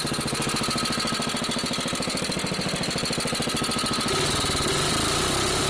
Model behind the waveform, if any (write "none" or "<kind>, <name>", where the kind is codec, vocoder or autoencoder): none